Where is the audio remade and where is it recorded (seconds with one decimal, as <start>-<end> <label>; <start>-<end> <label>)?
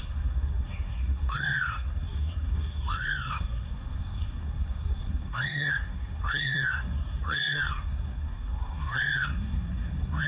0.0-10.3 remade